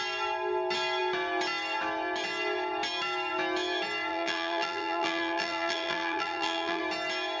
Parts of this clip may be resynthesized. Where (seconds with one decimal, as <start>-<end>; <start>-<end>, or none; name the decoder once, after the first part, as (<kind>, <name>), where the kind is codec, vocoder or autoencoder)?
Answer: 4.1-6.8 (vocoder, BigVGAN v2)